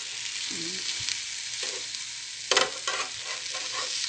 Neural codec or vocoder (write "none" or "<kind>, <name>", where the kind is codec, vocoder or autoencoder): none